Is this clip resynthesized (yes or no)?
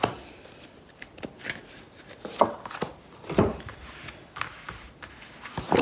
no